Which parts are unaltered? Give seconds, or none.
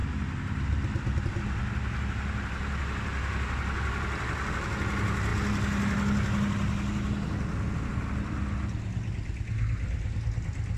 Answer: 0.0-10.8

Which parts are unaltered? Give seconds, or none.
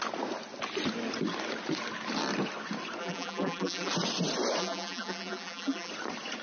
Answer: 0.0-3.0; 3.9-4.6; 5.9-6.4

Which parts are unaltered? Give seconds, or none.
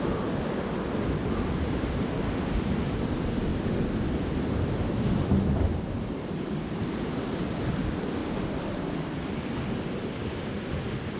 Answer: 3.5-6.8; 8.2-11.2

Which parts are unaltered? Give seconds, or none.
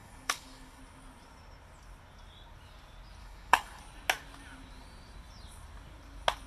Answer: 0.8-3.2; 3.8-6.5